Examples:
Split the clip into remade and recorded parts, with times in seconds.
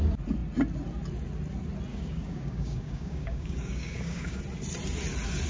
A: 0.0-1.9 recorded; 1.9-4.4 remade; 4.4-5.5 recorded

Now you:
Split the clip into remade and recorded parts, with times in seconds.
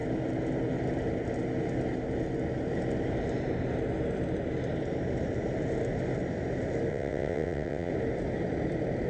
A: 0.0-6.9 recorded; 6.9-7.9 remade; 7.9-9.1 recorded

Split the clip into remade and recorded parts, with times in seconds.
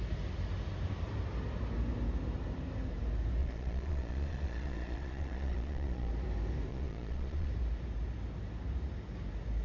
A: 0.0-3.4 recorded; 3.4-6.1 remade; 6.1-6.7 recorded; 6.7-7.5 remade; 7.5-9.6 recorded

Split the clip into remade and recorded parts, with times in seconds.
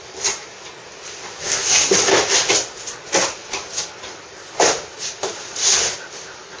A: 0.0-6.6 recorded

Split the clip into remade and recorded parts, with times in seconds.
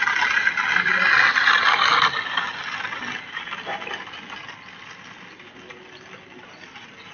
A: 0.0-7.1 recorded